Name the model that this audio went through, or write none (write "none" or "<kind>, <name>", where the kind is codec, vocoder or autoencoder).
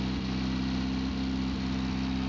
none